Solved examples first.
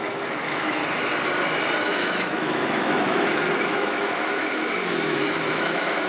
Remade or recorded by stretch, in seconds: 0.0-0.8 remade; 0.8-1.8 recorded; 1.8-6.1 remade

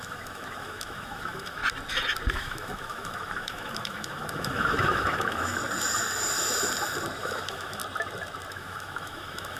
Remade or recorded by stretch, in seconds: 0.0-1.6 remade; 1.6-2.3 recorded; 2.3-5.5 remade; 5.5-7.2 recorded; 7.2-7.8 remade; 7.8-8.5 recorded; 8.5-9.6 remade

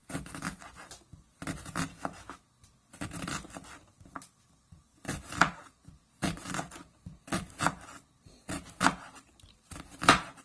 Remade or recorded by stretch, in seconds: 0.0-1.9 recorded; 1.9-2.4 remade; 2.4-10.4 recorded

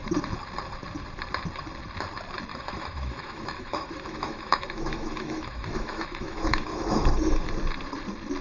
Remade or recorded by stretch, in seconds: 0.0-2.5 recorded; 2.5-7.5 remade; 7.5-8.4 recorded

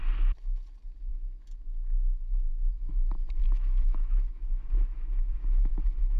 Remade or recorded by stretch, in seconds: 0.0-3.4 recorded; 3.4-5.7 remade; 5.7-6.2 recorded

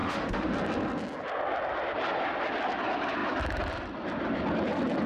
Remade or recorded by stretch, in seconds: 0.0-0.5 remade; 0.5-5.1 recorded